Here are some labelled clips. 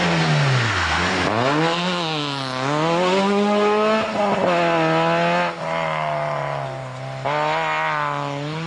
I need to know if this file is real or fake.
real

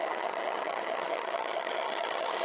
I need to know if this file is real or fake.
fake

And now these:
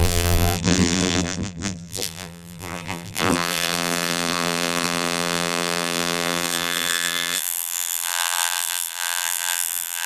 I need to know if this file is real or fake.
fake